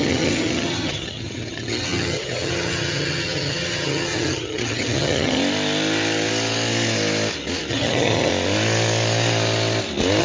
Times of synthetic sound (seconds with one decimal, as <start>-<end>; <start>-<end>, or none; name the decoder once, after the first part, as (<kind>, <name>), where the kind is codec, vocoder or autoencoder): 0.0-5.4 (vocoder, HiFi-GAN); 7.7-8.3